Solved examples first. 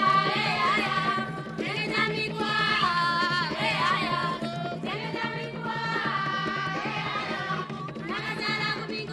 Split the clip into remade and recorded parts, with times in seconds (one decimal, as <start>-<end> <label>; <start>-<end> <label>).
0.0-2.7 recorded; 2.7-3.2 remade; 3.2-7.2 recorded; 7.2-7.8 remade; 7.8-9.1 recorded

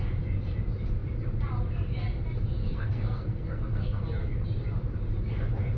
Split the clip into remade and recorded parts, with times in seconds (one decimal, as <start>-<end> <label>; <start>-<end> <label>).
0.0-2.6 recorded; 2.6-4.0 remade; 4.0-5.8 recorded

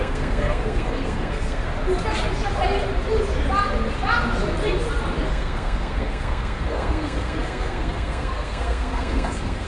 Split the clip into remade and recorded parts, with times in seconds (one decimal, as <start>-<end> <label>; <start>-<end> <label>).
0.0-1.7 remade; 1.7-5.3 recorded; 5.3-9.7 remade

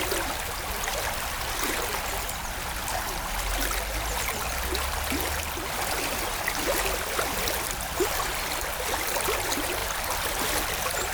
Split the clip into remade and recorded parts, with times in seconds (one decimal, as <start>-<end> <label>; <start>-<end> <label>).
0.0-11.1 recorded

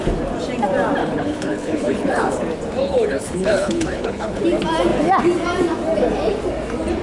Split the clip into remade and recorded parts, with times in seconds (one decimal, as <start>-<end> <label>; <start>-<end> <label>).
0.0-1.0 recorded; 1.0-2.4 remade; 2.4-2.8 recorded; 2.8-4.4 remade; 4.4-7.0 recorded

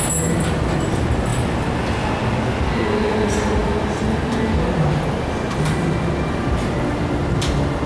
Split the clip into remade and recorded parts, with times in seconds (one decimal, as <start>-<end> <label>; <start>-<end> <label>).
0.0-7.9 recorded

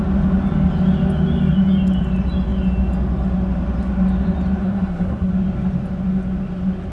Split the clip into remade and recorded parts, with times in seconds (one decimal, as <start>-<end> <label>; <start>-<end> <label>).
0.0-4.6 recorded; 4.6-5.3 remade; 5.3-6.9 recorded

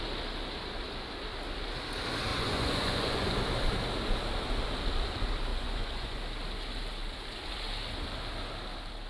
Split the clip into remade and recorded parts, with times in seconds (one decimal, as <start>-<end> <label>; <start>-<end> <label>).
0.0-2.3 recorded; 2.3-3.3 remade; 3.3-5.5 recorded; 5.5-6.2 remade; 6.2-9.1 recorded